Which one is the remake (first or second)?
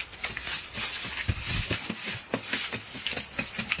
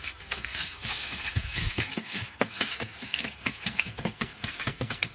second